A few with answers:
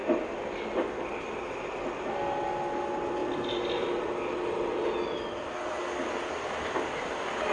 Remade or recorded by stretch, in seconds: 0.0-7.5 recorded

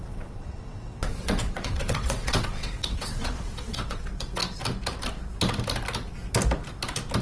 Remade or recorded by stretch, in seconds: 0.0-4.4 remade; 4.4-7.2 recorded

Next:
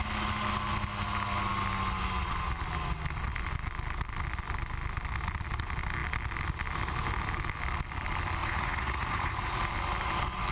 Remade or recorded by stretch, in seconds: 0.0-8.4 recorded; 8.4-9.7 remade; 9.7-10.5 recorded

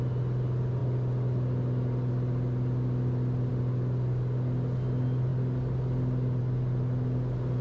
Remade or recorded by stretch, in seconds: 0.0-7.6 recorded